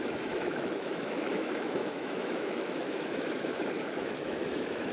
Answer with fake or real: fake